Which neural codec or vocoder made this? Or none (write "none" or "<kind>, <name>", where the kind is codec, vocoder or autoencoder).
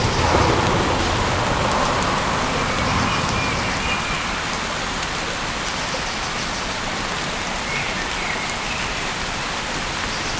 none